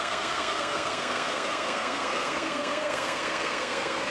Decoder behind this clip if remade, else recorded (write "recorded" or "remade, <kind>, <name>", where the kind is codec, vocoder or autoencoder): remade, codec, SNAC